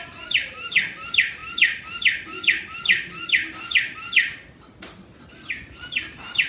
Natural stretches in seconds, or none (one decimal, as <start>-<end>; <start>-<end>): 0.0-6.5